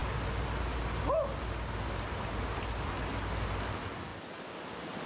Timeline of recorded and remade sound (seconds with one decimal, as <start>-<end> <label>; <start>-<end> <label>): 0.0-5.1 recorded